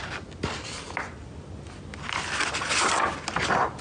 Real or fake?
real